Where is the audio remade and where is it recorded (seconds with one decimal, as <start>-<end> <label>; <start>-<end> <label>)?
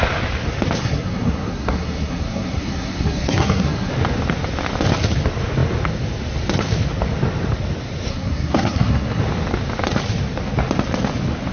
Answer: 0.0-0.8 recorded; 0.8-3.9 remade; 3.9-8.1 recorded; 8.1-9.2 remade; 9.2-11.5 recorded